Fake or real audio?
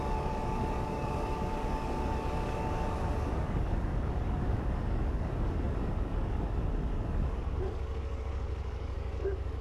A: fake